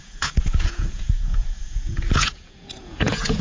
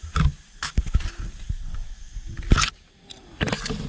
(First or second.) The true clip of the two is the second